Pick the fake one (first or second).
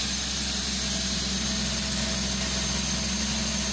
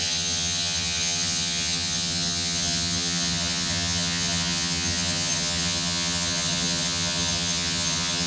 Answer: second